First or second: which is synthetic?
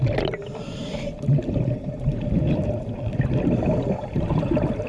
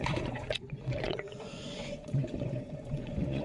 second